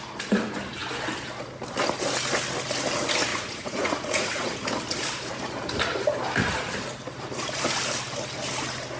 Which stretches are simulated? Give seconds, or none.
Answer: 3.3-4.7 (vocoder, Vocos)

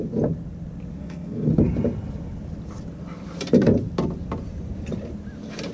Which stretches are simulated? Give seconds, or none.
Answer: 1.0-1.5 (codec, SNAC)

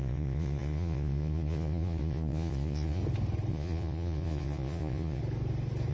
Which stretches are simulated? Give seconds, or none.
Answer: 0.0-3.0 (vocoder, Vocos); 3.5-5.2

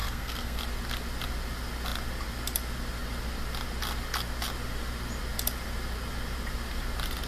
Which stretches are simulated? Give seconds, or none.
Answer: 0.0-0.6 (codec, SNAC)

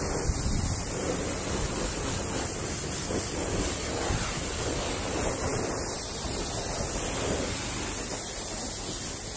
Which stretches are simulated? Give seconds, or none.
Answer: none

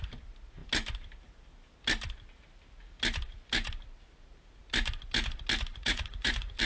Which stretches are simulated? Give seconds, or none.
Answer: 5.7-6.6 (vocoder, Vocos)

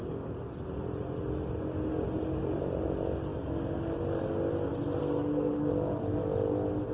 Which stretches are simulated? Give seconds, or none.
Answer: 5.0-5.7 (codec, SNAC)

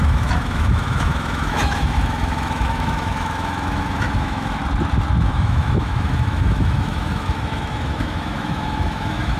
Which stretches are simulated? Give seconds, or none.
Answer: 0.0-4.6 (autoencoder, DAC-VAE); 5.2-9.4